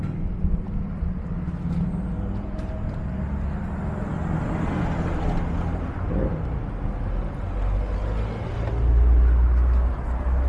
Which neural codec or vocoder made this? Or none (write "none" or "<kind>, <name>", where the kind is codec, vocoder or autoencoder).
none